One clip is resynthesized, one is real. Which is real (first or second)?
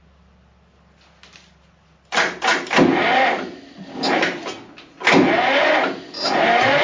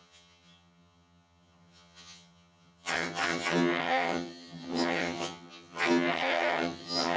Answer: first